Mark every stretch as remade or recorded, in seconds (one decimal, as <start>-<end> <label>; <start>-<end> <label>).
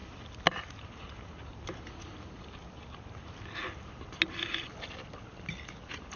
0.0-6.2 recorded